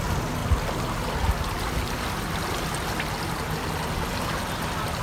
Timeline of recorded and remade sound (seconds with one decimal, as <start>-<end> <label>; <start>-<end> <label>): 0.0-5.0 recorded

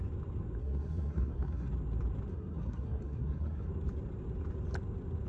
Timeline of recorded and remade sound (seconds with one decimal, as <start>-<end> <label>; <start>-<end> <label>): 0.0-0.6 recorded; 0.6-1.7 remade; 1.7-2.3 recorded; 2.3-3.7 remade; 3.7-5.3 recorded

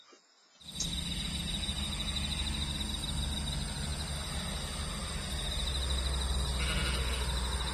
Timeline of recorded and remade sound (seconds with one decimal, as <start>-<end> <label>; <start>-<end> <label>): 0.0-7.7 recorded

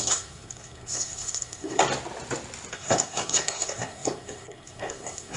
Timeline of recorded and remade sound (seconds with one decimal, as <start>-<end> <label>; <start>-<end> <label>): 0.0-1.8 remade; 1.8-2.7 recorded; 2.7-5.4 remade